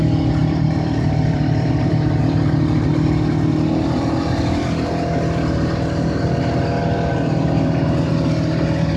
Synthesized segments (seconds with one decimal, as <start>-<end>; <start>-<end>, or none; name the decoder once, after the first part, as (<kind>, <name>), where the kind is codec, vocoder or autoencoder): 0.4-2.9 (vocoder, BigVGAN v2)